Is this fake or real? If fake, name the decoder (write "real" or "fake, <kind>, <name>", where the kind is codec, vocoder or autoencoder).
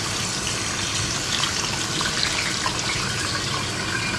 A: real